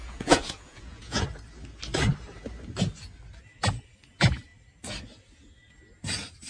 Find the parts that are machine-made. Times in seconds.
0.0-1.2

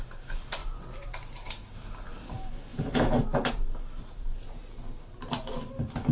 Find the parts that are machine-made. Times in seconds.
0.6-1.9

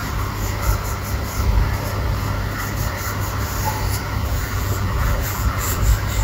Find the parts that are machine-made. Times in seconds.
4.2-5.8

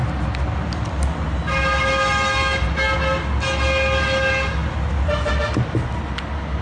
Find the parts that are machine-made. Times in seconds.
none

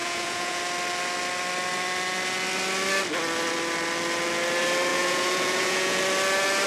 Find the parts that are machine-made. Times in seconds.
0.0-0.6; 4.9-6.0